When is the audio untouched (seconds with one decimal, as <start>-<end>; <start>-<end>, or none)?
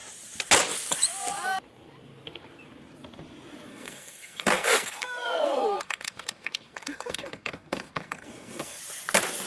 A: 0.0-3.7; 8.8-9.5